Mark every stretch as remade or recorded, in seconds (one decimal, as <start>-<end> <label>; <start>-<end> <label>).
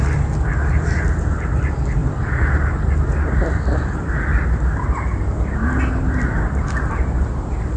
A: 0.0-7.8 recorded